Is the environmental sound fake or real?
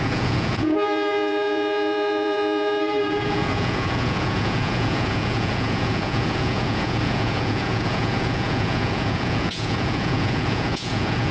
fake